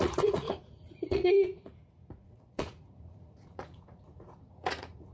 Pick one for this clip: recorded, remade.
remade